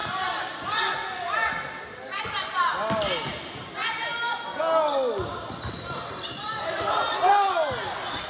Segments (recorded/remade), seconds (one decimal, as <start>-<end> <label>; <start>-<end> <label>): 0.0-8.3 recorded